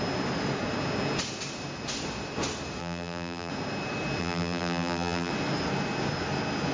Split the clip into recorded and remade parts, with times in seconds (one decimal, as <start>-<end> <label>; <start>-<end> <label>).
0.0-2.8 recorded; 2.8-3.5 remade; 3.5-4.2 recorded; 4.2-5.3 remade; 5.3-6.7 recorded